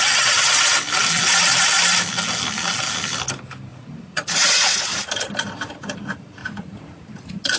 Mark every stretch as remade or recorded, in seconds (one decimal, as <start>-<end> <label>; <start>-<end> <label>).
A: 0.0-3.7 recorded; 3.7-5.1 remade; 5.1-6.4 recorded; 6.4-7.6 remade